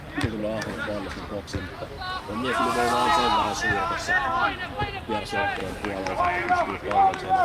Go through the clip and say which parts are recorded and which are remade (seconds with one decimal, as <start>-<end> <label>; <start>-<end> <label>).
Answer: 0.0-7.4 recorded